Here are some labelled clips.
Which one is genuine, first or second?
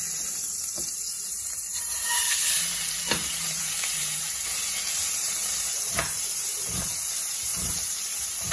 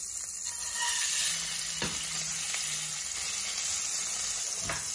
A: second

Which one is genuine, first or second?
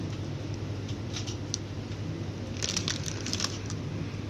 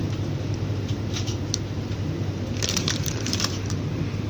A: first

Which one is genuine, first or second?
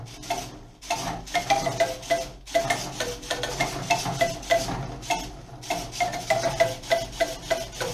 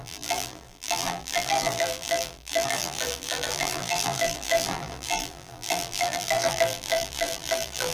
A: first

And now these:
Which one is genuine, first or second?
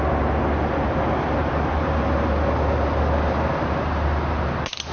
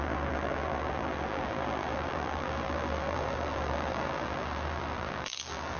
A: first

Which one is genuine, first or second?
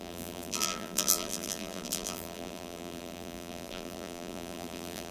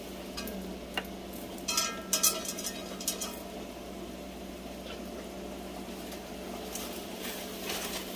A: second